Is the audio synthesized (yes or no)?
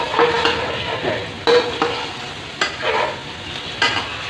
yes